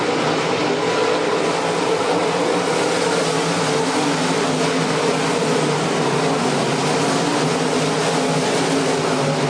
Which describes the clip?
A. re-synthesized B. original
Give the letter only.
B